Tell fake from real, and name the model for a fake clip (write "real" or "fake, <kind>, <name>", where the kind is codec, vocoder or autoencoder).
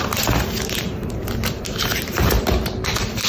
fake, vocoder, BigVGAN v2